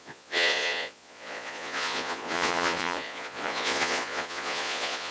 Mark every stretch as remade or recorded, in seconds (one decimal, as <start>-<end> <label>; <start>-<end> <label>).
0.0-5.1 remade